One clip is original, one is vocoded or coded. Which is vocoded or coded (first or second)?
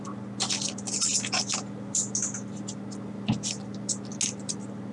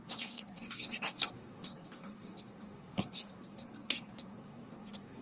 second